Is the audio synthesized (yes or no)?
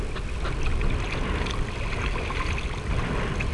no